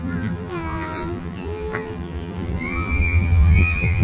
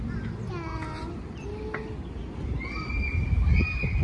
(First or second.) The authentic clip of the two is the second